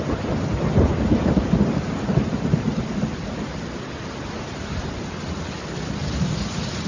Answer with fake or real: real